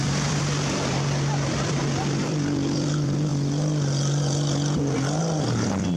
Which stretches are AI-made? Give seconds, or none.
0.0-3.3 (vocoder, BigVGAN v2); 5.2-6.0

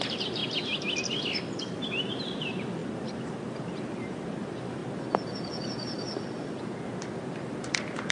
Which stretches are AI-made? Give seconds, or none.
0.0-0.4 (vocoder, BigVGAN v2); 1.5-4.8; 7.5-8.1

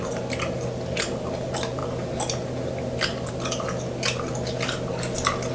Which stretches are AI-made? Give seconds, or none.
none

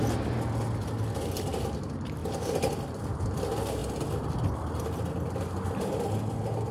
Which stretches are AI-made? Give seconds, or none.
none

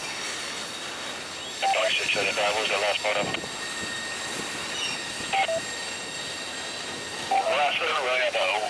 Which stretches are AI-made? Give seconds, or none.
none

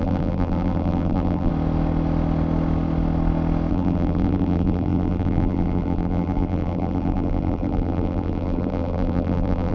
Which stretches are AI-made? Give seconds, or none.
0.0-1.5 (vocoder, BigVGAN v2); 3.7-9.7

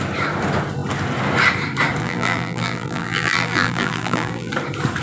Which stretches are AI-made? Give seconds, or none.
2.0-4.5 (vocoder, BigVGAN v2)

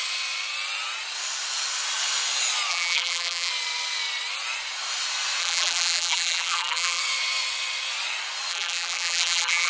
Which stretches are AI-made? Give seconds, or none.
2.7-3.5 (vocoder, BigVGAN v2); 5.4-7.0; 8.5-9.7